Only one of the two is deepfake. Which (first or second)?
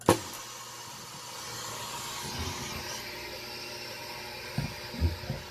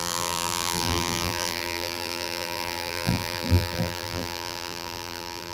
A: second